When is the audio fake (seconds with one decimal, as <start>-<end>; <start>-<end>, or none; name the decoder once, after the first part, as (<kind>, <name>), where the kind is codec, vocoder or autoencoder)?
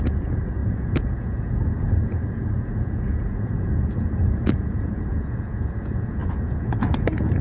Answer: 0.0-7.4 (vocoder, Vocos)